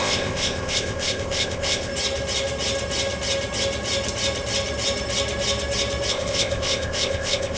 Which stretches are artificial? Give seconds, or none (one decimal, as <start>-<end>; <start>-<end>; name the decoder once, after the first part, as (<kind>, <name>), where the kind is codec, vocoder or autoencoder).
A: 0.0-1.9 (codec, ZipCodec); 6.1-7.6